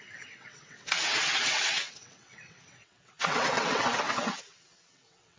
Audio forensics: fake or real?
fake